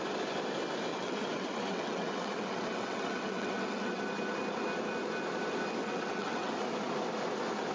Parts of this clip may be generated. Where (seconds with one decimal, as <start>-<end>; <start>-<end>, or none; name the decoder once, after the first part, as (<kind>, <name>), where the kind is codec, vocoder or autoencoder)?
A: 0.9-4.0 (vocoder, WaveNeXt); 5.8-6.5